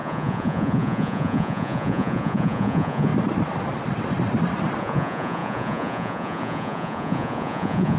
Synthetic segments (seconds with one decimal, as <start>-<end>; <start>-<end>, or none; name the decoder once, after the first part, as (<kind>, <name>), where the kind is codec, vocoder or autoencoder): 0.0-3.1 (vocoder, Vocos); 4.8-8.0